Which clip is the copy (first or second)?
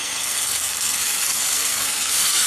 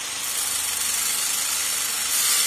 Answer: first